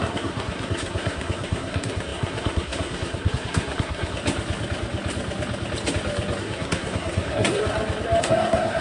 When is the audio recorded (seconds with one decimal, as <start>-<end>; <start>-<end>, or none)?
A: 4.2-6.4; 7.6-8.2